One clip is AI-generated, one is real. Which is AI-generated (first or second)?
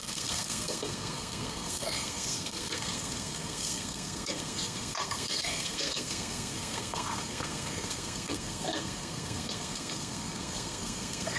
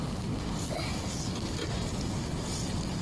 first